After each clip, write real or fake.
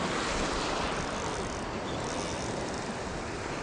real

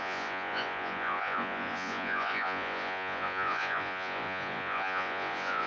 fake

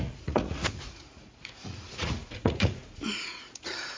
fake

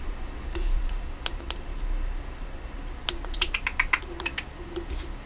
real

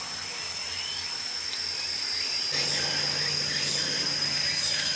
real